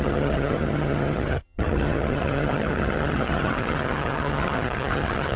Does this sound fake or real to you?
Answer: fake